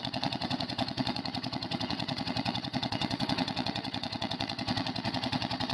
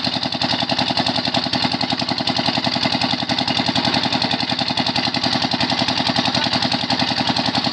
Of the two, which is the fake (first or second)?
first